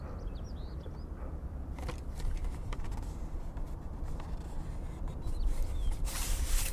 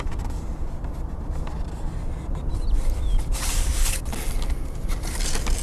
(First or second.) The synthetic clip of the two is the first